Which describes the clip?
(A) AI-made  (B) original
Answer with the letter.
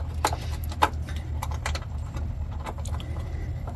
B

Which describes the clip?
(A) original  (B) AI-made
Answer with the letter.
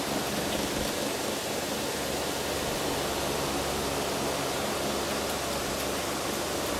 A